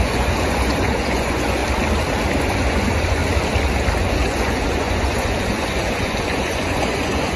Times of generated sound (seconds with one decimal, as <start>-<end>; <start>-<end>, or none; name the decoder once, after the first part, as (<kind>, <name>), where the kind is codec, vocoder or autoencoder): 0.0-1.6 (vocoder, Vocos); 2.4-3.2; 4.0-7.4